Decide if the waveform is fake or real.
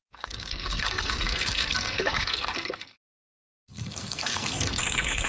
fake